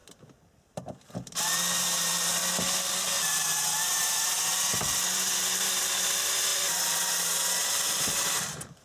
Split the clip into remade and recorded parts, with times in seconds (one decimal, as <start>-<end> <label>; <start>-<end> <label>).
0.0-1.8 recorded; 1.8-2.4 remade; 2.4-3.1 recorded; 3.1-8.8 remade